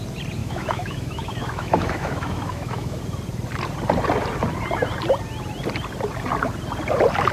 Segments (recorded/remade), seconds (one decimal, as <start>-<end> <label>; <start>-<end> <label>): 0.0-0.4 recorded; 0.4-3.0 remade; 3.0-7.3 recorded